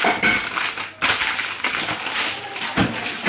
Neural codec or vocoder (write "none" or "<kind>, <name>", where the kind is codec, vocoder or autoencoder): none